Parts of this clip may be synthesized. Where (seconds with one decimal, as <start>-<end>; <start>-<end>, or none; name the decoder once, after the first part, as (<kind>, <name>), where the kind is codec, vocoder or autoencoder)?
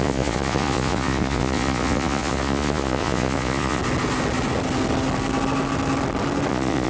0.0-3.8 (vocoder, Vocos); 6.5-6.9